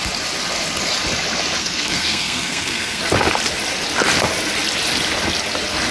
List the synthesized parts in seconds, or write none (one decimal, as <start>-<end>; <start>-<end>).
1.6-3.0